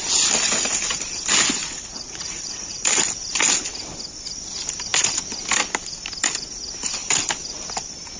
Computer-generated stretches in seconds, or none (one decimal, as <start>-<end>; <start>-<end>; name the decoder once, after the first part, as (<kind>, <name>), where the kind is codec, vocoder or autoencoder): 1.6-3.1 (vocoder, Vocos)